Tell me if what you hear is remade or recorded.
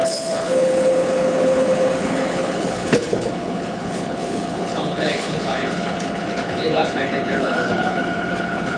remade